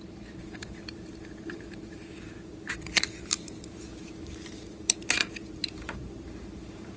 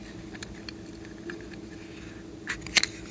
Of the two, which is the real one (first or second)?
second